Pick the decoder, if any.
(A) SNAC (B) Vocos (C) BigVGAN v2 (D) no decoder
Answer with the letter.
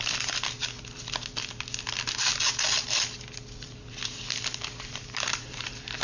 D